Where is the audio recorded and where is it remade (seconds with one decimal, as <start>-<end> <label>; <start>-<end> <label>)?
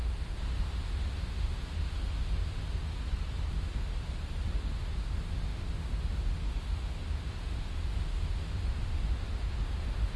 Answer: 0.0-2.9 remade; 2.9-3.5 recorded; 3.5-3.9 remade; 3.9-4.6 recorded; 4.6-10.2 remade